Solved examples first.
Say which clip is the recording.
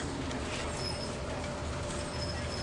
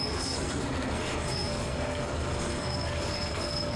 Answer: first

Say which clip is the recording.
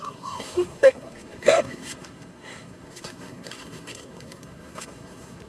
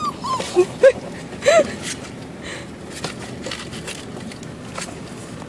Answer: second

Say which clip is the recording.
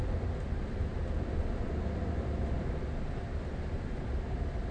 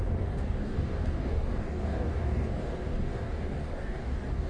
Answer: first